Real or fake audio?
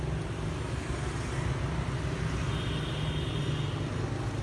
real